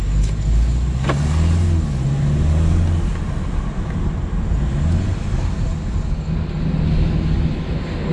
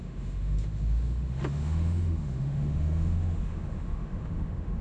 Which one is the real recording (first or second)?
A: first